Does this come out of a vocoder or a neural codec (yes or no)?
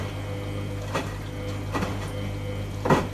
no